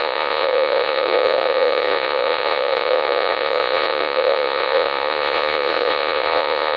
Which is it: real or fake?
fake